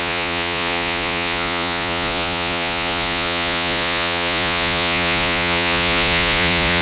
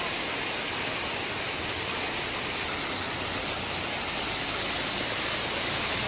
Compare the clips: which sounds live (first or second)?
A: second